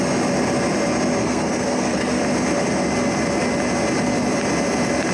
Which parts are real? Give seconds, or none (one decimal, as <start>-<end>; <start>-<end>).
0.0-1.2; 2.2-5.1